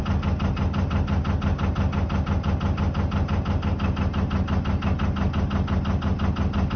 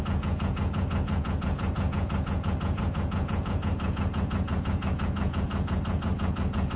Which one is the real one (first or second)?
first